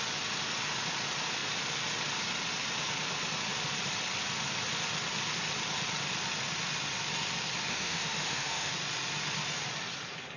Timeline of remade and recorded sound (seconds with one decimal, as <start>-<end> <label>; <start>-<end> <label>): 0.0-7.7 recorded; 7.7-8.7 remade; 8.7-10.4 recorded